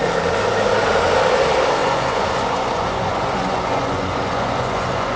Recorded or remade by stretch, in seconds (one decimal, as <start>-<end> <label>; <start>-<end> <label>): 0.0-1.8 recorded; 1.8-5.2 remade